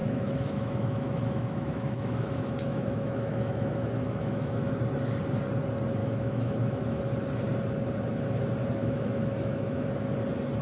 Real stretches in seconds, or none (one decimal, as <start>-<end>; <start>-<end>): 4.7-6.0; 7.0-8.8; 9.9-10.6